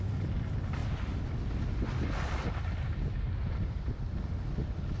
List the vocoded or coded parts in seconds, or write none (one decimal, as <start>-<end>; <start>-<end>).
none